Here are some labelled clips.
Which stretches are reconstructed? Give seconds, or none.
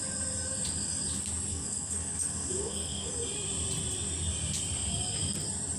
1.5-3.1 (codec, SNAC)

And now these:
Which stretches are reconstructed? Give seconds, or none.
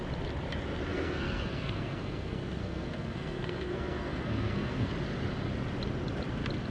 0.9-4.9 (codec, SNAC)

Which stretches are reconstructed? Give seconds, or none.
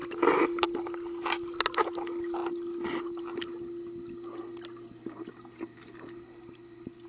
none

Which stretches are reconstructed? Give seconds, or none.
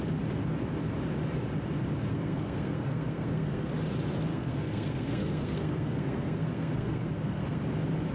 2.1-3.7 (codec, SNAC); 4.3-7.6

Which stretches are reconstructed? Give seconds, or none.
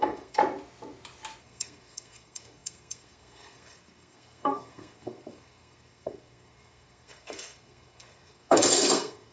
0.0-0.4 (codec, SNAC); 1.4-9.3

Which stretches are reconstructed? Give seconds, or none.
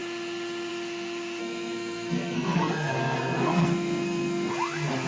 1.4-4.5 (codec, SNAC)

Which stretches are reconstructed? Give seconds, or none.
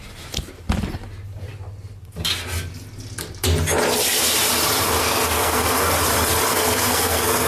5.0-6.0 (codec, SNAC); 6.5-7.5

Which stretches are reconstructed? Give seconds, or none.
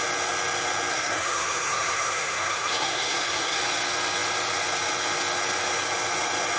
0.9-3.6 (codec, SNAC)